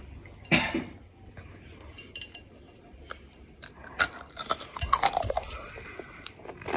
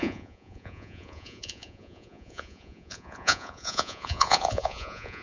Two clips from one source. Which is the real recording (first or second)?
first